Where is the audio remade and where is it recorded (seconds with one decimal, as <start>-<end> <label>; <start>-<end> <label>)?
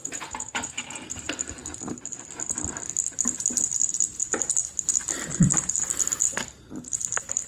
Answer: 0.0-7.5 recorded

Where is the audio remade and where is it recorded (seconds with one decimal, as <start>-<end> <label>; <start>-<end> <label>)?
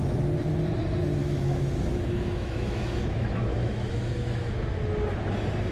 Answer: 0.0-1.2 recorded; 1.2-4.6 remade; 4.6-5.7 recorded